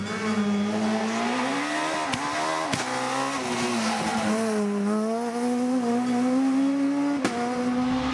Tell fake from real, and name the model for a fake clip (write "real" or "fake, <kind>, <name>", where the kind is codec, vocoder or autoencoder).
real